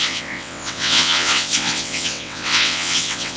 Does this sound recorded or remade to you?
remade